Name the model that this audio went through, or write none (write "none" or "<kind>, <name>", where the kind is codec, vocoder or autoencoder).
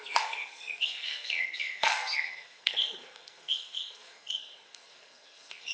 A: codec, SNAC